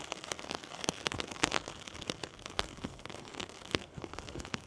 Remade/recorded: remade